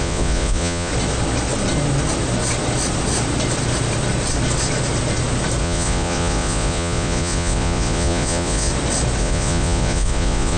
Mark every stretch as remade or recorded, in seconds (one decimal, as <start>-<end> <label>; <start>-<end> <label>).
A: 0.0-0.9 remade; 0.9-5.6 recorded; 5.6-8.7 remade; 8.7-9.2 recorded; 9.2-10.6 remade